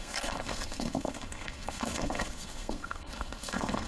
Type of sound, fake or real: fake